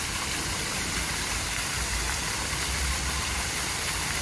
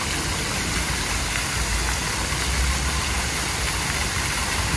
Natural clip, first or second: second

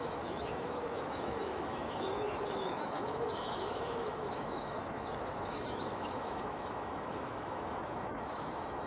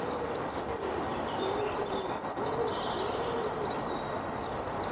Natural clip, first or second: second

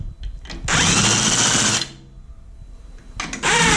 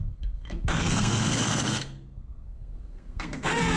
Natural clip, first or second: first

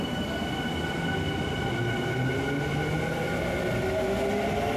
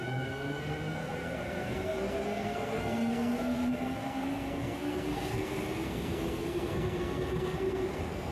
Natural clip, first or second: first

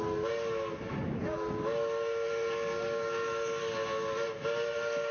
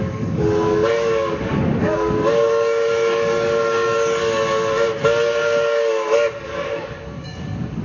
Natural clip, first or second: first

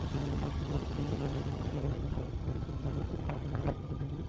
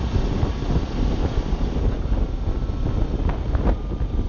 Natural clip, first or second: second